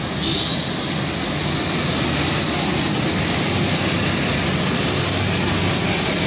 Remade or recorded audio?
recorded